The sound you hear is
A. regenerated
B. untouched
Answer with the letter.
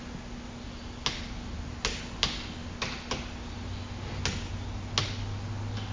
B